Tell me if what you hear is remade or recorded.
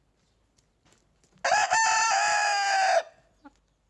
recorded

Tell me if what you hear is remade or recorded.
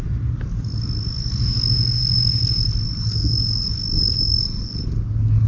recorded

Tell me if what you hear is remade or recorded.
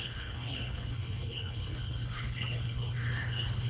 remade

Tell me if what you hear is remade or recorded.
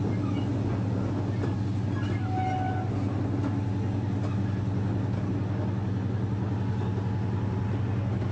recorded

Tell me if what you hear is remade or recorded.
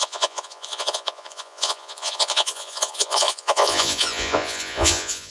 remade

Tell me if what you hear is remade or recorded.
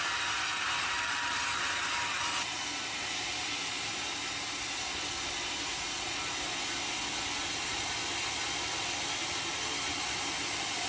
recorded